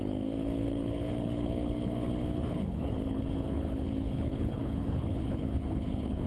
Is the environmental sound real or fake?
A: fake